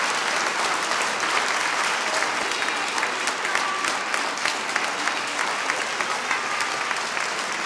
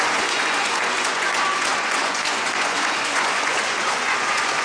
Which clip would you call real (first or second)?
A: first